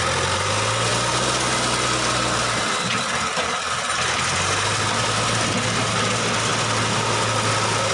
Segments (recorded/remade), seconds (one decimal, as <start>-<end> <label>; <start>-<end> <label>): 0.0-7.9 recorded